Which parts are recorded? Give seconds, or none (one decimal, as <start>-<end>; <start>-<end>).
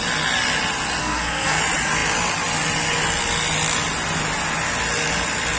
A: 0.0-1.0; 1.6-5.6